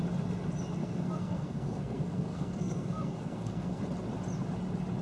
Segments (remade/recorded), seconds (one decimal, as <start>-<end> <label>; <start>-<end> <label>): 0.0-0.8 recorded; 0.8-3.8 remade; 3.8-5.0 recorded